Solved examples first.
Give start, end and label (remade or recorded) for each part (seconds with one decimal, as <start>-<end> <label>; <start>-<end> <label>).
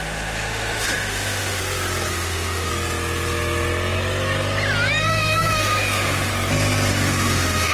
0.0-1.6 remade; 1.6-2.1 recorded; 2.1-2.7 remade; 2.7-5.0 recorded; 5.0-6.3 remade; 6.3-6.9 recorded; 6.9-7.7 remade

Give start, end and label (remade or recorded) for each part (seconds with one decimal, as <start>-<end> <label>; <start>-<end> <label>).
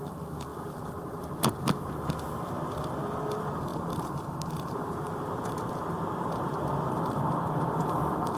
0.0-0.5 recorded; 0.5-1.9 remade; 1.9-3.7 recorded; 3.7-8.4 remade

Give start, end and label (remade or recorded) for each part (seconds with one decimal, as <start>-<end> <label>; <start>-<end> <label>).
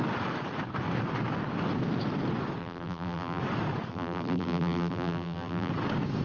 0.0-2.6 recorded; 2.6-3.4 remade; 3.4-3.9 recorded; 3.9-5.7 remade; 5.7-6.2 recorded